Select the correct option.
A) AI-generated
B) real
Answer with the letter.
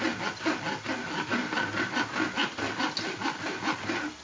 B